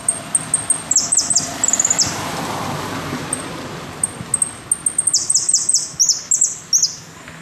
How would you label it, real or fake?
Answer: real